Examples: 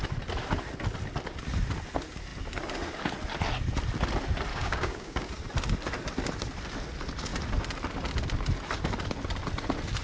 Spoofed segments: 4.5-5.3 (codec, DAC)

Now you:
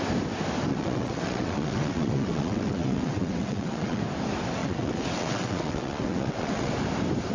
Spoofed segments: 0.7-4.0 (vocoder, WaveNeXt); 4.6-6.7